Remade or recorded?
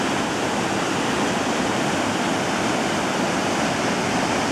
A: recorded